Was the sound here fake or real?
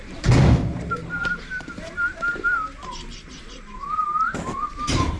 fake